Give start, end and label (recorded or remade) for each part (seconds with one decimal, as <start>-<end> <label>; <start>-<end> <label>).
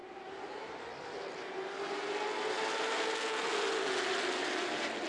0.0-0.8 remade; 0.8-5.1 recorded